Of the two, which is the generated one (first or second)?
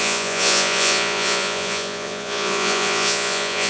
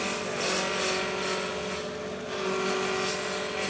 first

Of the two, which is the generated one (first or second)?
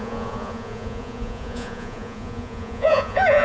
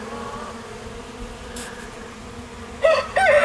first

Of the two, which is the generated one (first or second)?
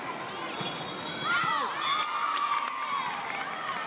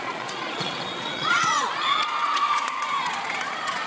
second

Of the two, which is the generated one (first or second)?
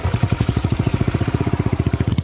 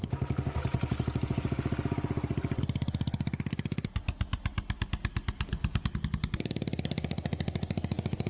first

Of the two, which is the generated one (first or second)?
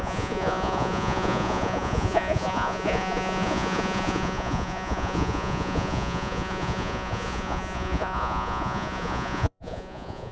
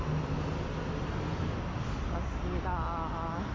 first